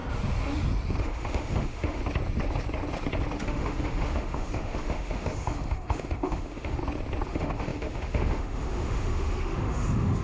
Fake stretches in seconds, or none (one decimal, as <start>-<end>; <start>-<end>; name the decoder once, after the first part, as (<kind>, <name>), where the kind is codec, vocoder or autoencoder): 1.0-2.0 (autoencoder, DAC-VAE); 3.4-6.8; 7.3-10.2